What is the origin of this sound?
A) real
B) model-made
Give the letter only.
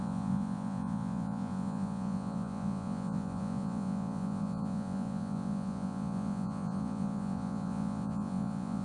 B